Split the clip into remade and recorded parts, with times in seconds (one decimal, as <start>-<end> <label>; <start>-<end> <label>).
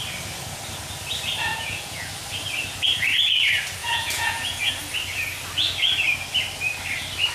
0.0-1.5 recorded; 1.5-2.1 remade; 2.1-3.8 recorded; 3.8-4.7 remade; 4.7-7.3 recorded